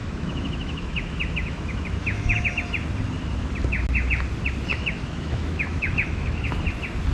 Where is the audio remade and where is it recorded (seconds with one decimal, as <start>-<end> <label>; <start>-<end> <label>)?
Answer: 0.0-2.5 remade; 2.5-4.7 recorded; 4.7-6.5 remade; 6.5-7.1 recorded